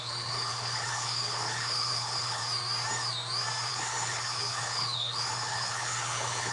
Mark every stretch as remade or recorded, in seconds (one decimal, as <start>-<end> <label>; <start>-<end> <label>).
0.0-2.4 remade; 2.4-3.7 recorded; 3.7-6.5 remade